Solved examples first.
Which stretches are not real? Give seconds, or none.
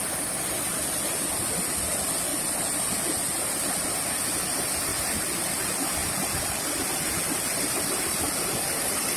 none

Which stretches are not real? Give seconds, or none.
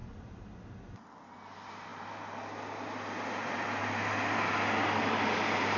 none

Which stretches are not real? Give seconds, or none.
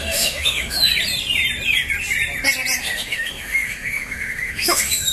0.0-0.9 (autoencoder, DAC-VAE); 2.8-5.1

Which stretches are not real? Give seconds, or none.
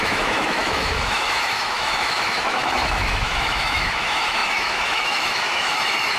0.0-6.2 (autoencoder, DAC-VAE)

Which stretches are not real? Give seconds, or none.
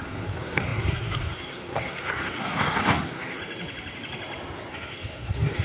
0.0-3.4 (codec, SNAC); 4.7-5.6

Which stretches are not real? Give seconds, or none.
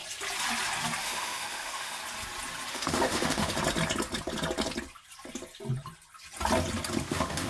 1.0-2.0 (autoencoder, DAC-VAE); 2.7-3.5; 7.0-7.5